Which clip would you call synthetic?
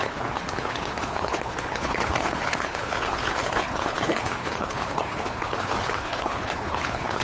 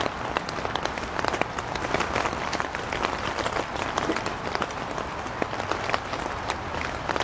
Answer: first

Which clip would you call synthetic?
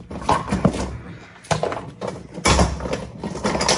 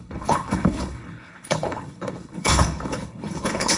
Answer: second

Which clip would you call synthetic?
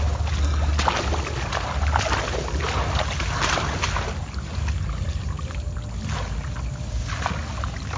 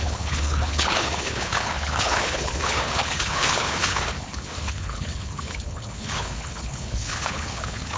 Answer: second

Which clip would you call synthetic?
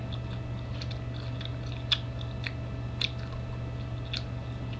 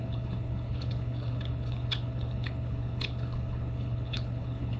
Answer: second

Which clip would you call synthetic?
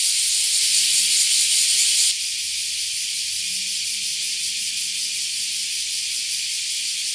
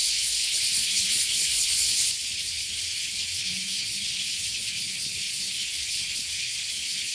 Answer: second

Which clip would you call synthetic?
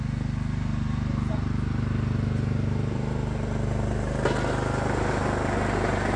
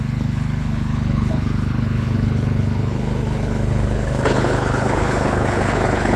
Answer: second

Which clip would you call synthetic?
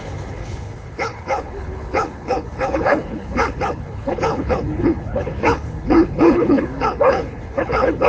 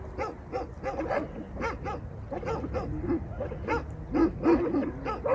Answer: first